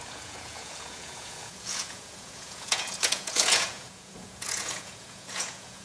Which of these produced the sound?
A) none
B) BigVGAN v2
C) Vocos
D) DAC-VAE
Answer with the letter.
C